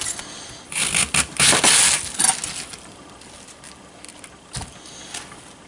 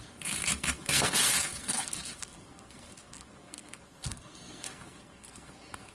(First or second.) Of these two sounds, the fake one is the second